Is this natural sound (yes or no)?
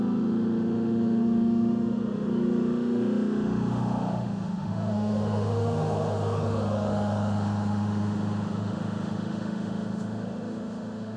no